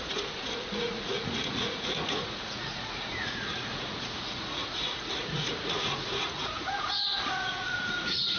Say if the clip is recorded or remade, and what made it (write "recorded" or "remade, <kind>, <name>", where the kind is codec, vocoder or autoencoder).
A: remade, vocoder, Vocos